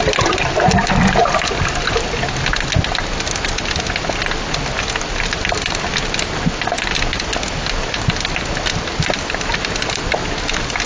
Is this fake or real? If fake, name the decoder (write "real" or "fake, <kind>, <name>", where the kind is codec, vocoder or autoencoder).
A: real